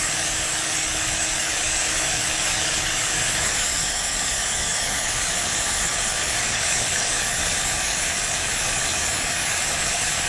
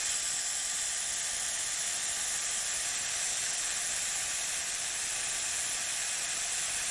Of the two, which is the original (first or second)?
second